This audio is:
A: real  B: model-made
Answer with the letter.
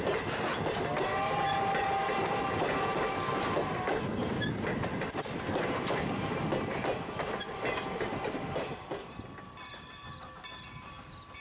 A